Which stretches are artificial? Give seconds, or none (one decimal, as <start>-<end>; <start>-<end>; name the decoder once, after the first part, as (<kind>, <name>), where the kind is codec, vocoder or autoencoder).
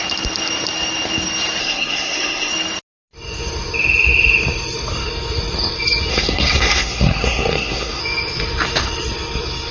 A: 1.6-2.5 (codec, SNAC); 6.1-8.0